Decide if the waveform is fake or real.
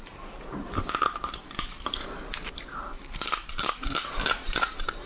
fake